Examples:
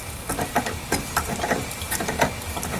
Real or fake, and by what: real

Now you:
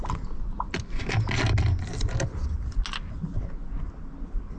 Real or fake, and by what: real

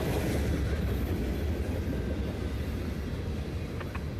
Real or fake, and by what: real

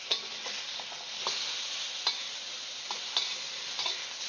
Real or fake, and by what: real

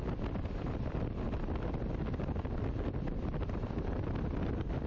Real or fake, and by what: real